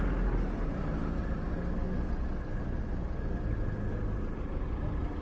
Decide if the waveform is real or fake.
real